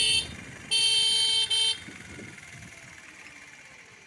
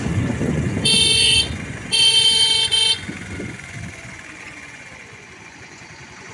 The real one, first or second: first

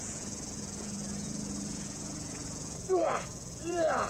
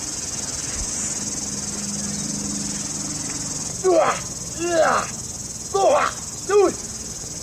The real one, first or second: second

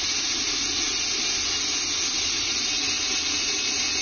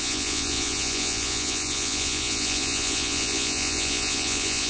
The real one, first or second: first